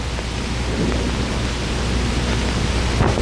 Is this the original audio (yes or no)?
yes